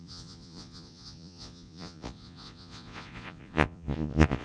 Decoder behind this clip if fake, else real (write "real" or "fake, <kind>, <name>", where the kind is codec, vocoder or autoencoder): fake, vocoder, Vocos